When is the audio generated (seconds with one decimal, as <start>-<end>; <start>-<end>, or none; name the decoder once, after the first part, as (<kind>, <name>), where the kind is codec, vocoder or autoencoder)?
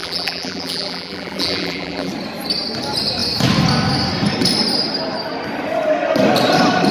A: 0.0-2.1 (vocoder, BigVGAN v2)